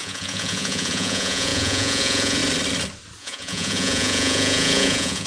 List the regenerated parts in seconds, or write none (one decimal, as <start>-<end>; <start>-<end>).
0.0-2.4; 3.2-5.3